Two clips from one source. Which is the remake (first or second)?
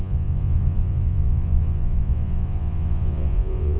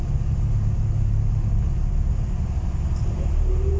first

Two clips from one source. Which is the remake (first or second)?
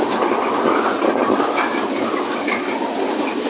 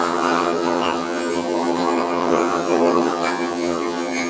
second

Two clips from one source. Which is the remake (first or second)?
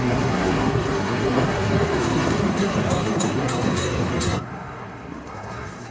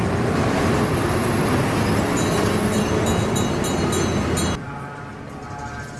first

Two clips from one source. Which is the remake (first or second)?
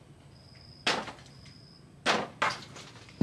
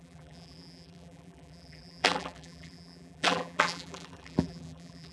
second